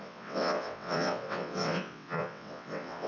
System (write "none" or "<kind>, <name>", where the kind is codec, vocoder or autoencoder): vocoder, WaveNeXt